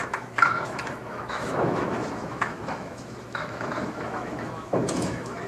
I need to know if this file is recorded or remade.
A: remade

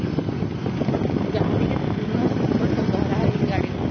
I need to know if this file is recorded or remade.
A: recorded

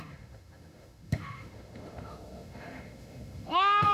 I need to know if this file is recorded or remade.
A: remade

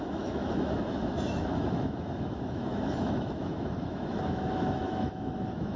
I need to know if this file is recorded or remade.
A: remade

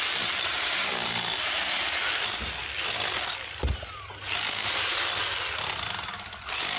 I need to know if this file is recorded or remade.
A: recorded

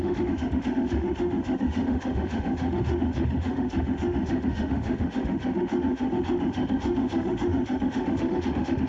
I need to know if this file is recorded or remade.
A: remade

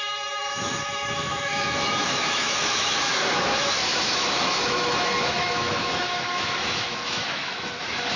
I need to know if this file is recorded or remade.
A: remade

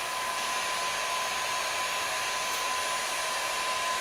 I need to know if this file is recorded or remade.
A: recorded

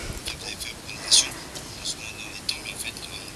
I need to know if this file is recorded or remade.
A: recorded